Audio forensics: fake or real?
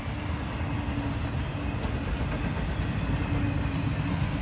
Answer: real